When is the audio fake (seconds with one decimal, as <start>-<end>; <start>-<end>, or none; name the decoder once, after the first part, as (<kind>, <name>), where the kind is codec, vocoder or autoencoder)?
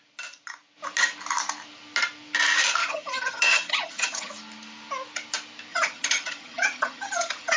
2.8-4.3 (vocoder, HiFi-GAN); 5.7-7.6